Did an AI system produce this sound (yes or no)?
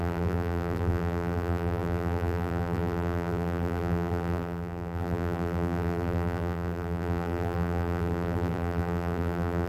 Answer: yes